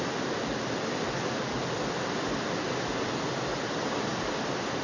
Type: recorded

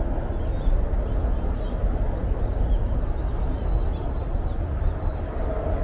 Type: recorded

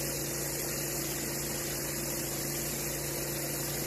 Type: recorded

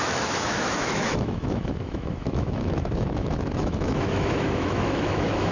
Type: remade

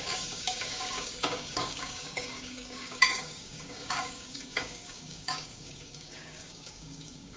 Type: remade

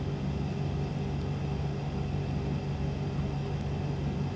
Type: recorded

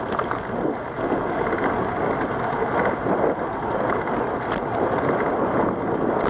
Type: recorded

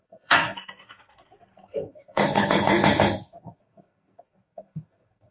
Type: remade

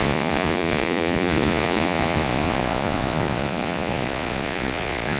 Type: remade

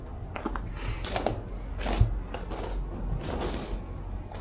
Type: recorded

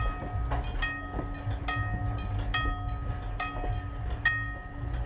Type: recorded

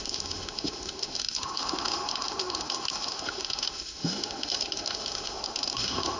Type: remade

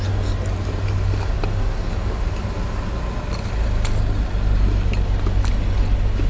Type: recorded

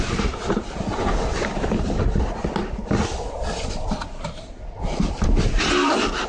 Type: recorded